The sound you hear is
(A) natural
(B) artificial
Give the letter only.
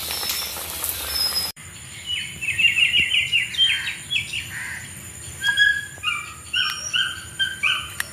B